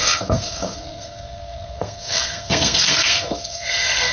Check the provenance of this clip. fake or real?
fake